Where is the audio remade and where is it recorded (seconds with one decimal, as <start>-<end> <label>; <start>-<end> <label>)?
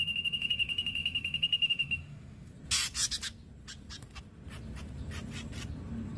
0.0-2.5 remade; 2.5-6.2 recorded